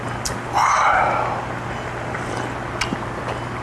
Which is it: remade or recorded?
recorded